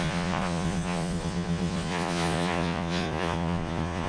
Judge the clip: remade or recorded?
remade